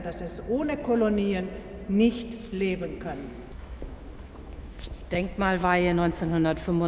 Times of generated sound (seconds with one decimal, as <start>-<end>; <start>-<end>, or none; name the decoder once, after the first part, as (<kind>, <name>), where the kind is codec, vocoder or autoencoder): 0.8-1.4 (autoencoder, DAC-VAE); 2.5-6.9